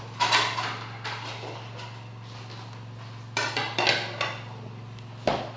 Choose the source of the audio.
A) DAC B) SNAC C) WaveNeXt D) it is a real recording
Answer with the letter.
D